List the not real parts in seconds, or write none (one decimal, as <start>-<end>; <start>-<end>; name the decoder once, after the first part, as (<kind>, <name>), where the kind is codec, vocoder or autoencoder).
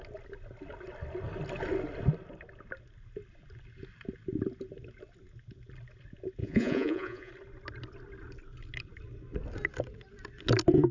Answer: 6.4-7.3 (vocoder, Vocos)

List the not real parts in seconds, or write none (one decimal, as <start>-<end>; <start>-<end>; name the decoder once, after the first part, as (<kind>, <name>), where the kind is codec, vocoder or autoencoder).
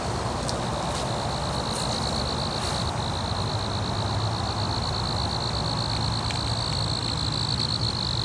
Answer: none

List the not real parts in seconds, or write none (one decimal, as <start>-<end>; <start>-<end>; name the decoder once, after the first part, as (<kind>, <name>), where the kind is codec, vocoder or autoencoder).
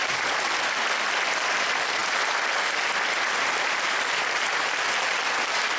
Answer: none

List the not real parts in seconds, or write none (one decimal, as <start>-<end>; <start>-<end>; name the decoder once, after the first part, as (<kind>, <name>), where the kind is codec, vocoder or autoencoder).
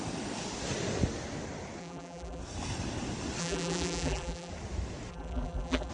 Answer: 1.8-2.4 (vocoder, BigVGAN v2); 3.4-4.5; 5.1-5.9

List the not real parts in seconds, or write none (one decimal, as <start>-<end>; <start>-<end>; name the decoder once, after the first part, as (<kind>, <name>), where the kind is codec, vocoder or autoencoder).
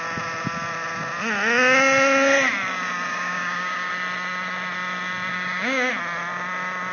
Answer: 3.1-3.9 (codec, DAC); 5.3-5.9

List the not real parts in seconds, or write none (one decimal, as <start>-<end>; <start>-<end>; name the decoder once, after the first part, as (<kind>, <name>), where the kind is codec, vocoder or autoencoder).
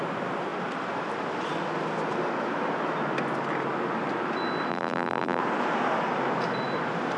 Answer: 4.7-5.4 (vocoder, BigVGAN v2)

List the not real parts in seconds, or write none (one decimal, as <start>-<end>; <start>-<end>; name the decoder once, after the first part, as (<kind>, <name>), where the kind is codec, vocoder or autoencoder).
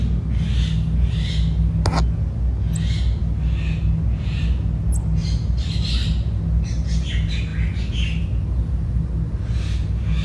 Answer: none